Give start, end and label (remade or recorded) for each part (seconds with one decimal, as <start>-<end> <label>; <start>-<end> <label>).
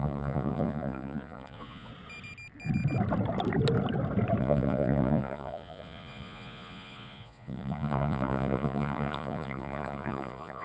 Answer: 0.0-1.9 remade; 1.9-4.4 recorded; 4.4-10.6 remade